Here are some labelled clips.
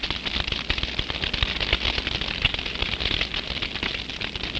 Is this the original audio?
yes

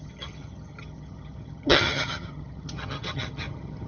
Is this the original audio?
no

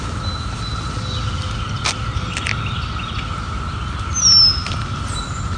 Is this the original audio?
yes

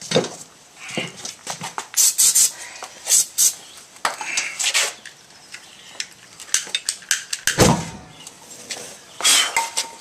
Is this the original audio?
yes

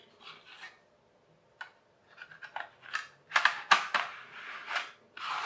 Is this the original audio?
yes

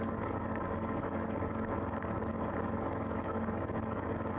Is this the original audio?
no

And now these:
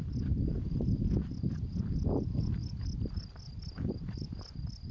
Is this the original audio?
yes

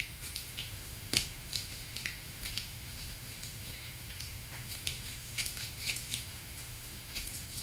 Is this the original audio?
no